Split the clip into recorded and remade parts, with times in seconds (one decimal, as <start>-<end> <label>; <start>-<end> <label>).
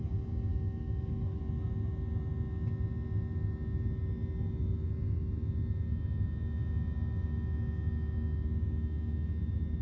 0.0-0.5 recorded; 0.5-1.4 remade; 1.4-9.8 recorded